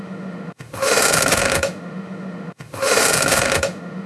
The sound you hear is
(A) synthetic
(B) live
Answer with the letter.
A